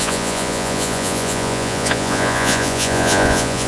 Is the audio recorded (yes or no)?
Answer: no